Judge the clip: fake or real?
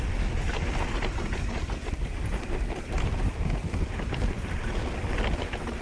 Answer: fake